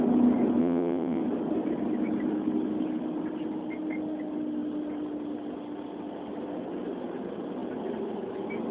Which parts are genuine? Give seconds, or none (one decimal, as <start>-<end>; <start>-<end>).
0.0-0.6; 1.2-8.7